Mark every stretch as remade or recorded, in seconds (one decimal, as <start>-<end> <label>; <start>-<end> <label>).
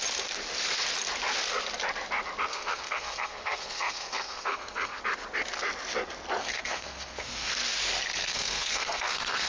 0.0-2.5 recorded; 2.5-5.0 remade; 5.0-6.4 recorded; 6.4-7.5 remade; 7.5-8.2 recorded; 8.2-9.5 remade